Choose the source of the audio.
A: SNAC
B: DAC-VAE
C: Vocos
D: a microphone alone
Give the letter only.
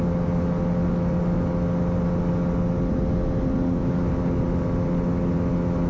D